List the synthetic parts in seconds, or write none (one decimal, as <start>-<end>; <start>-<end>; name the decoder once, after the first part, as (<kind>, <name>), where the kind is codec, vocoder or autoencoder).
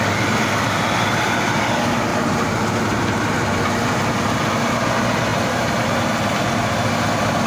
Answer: 2.1-4.0 (vocoder, BigVGAN v2); 5.3-6.5